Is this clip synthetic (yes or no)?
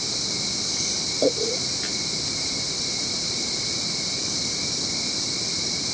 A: no